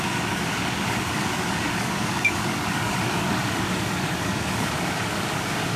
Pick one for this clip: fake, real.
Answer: fake